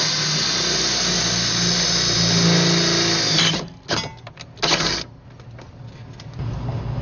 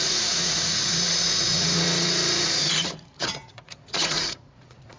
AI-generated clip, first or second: second